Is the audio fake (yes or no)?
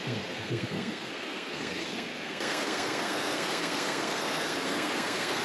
yes